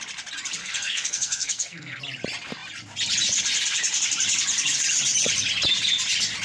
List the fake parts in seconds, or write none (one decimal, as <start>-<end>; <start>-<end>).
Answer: 0.6-2.0